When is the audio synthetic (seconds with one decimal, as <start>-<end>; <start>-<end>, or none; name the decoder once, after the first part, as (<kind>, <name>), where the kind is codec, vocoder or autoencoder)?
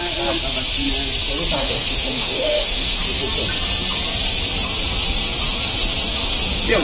1.6-3.0 (autoencoder, DAC-VAE)